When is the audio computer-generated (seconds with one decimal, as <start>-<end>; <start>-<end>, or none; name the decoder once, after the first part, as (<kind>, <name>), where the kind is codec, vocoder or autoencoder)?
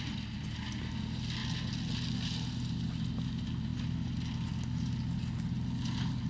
none